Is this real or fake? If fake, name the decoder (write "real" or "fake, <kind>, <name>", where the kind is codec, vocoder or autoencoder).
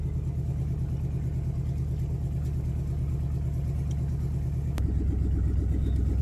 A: real